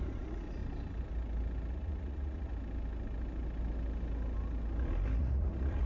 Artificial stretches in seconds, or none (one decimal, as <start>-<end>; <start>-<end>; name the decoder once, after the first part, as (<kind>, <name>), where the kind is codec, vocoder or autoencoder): 0.0-0.6 (vocoder, Vocos); 1.7-2.5; 5.2-5.9